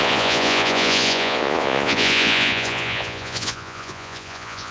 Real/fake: fake